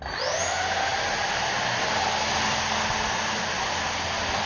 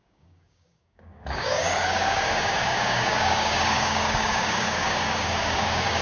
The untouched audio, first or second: first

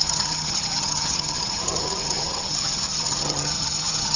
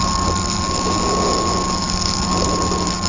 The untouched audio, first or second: second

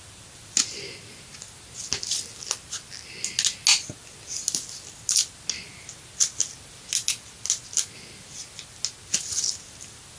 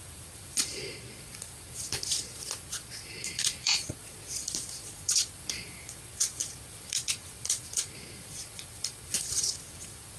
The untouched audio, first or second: first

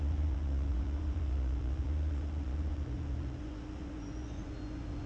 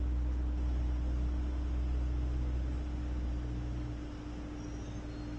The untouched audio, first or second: second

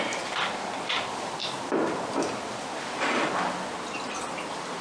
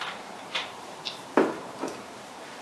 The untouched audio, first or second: first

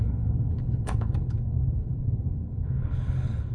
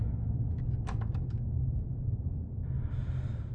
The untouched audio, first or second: second